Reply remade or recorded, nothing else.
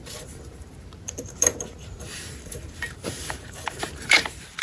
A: remade